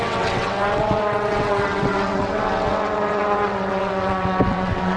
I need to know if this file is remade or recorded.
remade